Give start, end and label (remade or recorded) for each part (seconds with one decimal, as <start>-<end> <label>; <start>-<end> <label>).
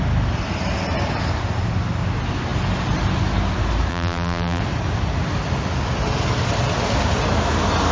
0.0-3.9 recorded; 3.9-4.6 remade; 4.6-7.9 recorded